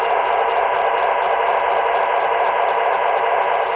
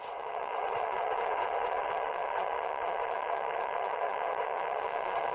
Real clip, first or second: first